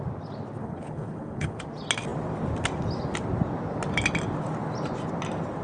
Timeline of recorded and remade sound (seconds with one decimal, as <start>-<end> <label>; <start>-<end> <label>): 0.0-0.6 recorded; 0.6-1.6 remade; 1.6-5.6 recorded

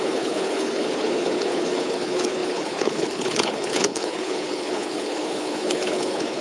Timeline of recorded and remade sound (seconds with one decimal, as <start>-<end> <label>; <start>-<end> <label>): 0.0-6.4 remade